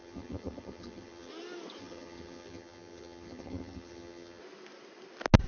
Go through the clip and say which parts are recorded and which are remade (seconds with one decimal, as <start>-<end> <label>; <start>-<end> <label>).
0.0-1.3 remade; 1.3-1.8 recorded; 1.8-4.4 remade; 4.4-5.5 recorded